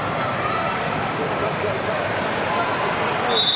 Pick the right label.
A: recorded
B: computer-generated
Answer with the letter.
A